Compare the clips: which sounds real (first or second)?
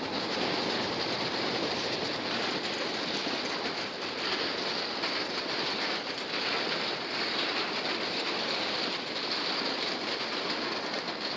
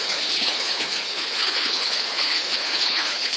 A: first